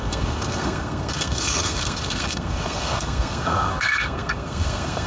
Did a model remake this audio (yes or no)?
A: yes